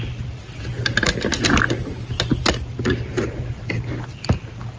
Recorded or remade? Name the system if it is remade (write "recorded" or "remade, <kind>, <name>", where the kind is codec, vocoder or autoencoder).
recorded